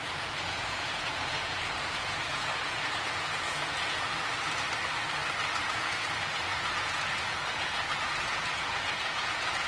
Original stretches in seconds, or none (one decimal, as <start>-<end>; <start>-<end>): 4.1-5.7